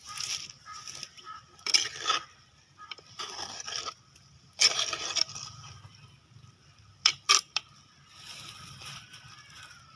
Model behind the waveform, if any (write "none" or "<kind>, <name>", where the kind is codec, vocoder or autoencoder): vocoder, BigVGAN v2